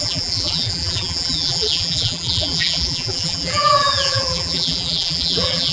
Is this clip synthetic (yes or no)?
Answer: yes